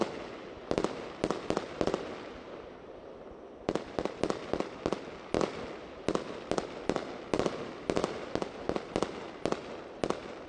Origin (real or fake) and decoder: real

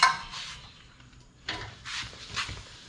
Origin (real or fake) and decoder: fake, vocoder, BigVGAN v2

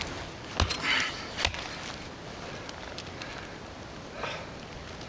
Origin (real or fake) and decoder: real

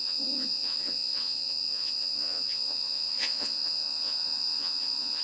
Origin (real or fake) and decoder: fake, vocoder, Vocos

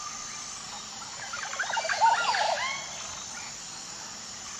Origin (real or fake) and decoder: real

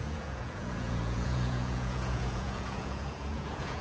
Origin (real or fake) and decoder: fake, vocoder, Vocos